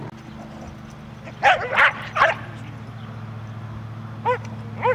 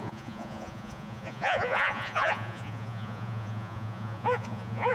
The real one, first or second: first